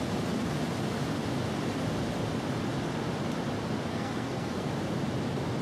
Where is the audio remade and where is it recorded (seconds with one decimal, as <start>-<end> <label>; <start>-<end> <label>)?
0.0-3.9 recorded; 3.9-4.7 remade; 4.7-5.6 recorded

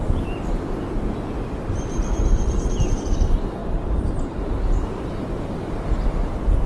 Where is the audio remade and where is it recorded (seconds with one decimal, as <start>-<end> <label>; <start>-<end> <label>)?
0.0-3.6 recorded; 3.6-5.0 remade; 5.0-6.7 recorded

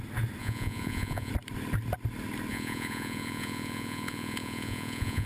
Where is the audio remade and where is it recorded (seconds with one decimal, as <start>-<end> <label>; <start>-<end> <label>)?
0.0-0.4 recorded; 0.4-1.3 remade; 1.3-2.5 recorded; 2.5-5.3 remade

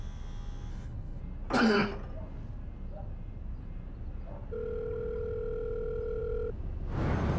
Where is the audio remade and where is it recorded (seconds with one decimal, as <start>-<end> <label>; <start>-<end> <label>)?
0.0-0.7 recorded; 0.7-1.2 remade; 1.2-7.4 recorded

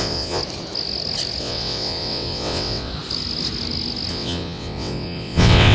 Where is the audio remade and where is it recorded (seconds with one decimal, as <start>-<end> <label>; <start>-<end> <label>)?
0.0-0.4 remade; 0.4-1.4 recorded; 1.4-2.9 remade; 2.9-4.1 recorded; 4.1-5.7 remade